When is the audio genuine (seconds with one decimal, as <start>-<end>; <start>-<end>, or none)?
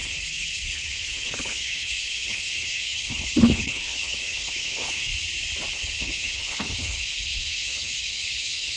5.1-5.7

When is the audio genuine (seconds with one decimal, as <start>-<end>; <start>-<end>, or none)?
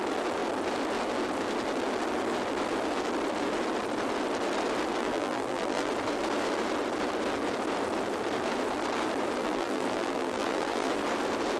0.0-5.0; 5.9-9.4; 10.9-11.6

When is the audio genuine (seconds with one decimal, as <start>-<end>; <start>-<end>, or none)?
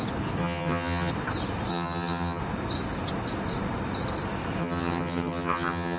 0.0-0.4; 1.1-1.7; 2.4-4.6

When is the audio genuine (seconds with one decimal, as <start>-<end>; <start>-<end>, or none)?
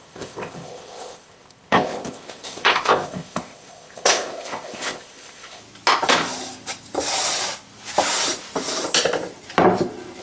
5.6-10.2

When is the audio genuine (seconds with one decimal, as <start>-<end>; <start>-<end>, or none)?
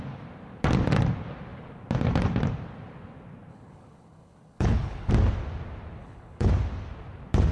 0.0-3.5; 5.1-6.0; 6.5-7.5